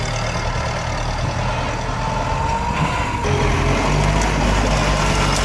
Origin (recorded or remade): recorded